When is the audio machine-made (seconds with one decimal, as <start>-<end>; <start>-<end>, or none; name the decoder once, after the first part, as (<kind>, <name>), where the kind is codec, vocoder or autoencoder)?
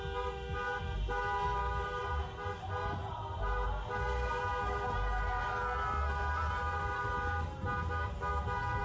none